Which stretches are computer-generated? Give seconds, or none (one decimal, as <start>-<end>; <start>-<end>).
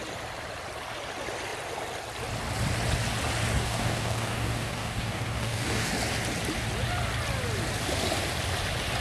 3.6-5.9